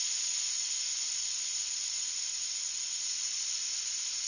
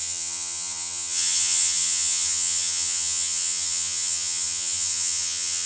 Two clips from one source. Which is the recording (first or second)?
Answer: first